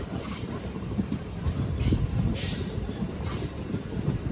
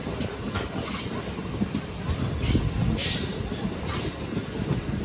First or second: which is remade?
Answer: first